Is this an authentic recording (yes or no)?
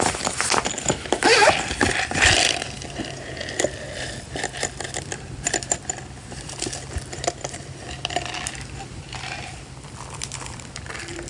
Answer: no